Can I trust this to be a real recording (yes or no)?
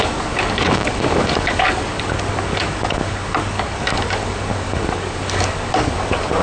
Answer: no